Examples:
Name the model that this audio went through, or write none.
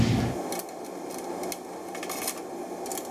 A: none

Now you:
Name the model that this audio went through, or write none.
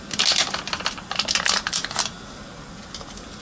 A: none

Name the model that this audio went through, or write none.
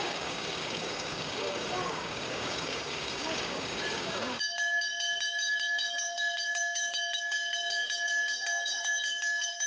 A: codec, DAC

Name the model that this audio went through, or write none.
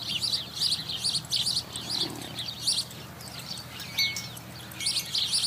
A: none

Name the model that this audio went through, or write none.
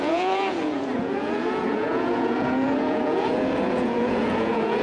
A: vocoder, Vocos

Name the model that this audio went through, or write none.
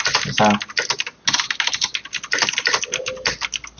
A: none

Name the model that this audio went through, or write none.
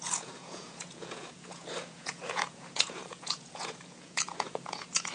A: vocoder, Vocos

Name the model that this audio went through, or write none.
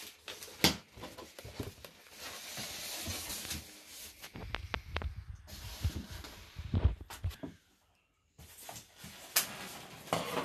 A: none